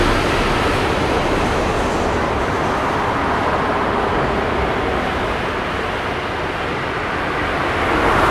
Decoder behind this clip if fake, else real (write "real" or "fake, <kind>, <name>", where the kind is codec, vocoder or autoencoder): real